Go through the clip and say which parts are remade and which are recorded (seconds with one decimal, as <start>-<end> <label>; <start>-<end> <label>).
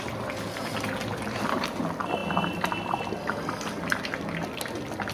0.0-5.1 recorded